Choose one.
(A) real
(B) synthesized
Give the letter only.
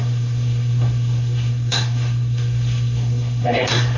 B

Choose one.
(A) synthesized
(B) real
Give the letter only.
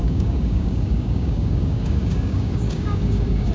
A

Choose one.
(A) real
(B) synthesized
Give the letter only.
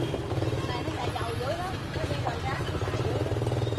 A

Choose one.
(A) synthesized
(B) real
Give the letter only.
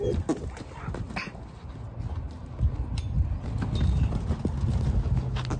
B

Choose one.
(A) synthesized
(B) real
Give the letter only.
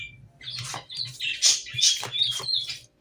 B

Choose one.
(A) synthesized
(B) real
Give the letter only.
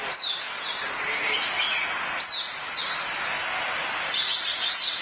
B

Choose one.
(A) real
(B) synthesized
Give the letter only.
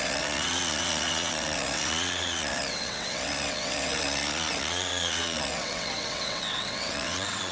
B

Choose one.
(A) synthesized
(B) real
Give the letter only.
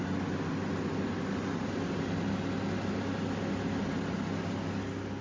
B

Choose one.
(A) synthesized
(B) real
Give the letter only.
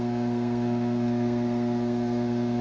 A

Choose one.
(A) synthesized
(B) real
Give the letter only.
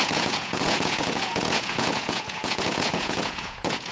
A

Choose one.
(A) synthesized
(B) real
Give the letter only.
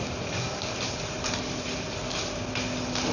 B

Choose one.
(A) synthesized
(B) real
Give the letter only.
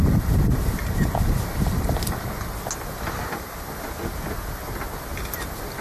B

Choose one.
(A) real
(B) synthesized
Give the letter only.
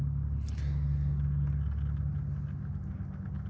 A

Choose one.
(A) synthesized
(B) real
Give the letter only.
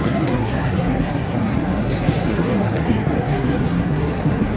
A